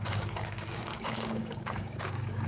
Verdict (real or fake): fake